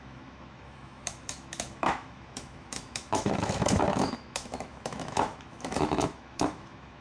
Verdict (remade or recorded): remade